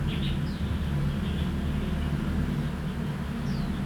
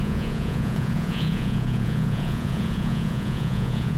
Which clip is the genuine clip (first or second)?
first